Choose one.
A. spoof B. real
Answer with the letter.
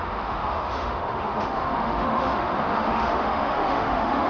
A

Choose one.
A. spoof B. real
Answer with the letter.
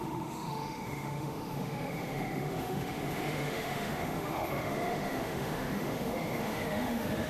A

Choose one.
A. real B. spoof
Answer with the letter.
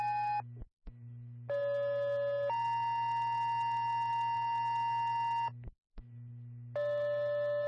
A